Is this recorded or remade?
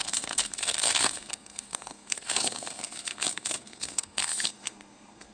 remade